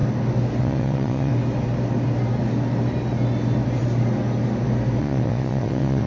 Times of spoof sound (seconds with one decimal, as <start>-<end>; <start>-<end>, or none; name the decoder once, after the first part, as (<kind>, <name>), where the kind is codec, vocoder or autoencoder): 0.6-1.3 (vocoder, WaveNeXt); 5.0-6.1